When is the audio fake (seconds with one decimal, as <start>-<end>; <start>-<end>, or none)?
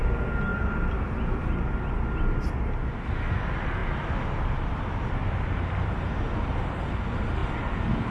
none